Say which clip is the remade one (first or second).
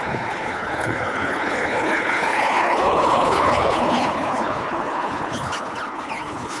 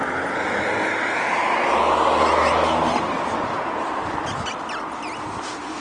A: first